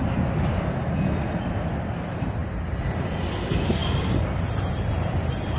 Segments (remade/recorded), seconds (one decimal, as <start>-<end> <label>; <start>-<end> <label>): 0.0-5.6 recorded